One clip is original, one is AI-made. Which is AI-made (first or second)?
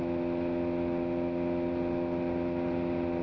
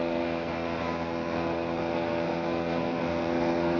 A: second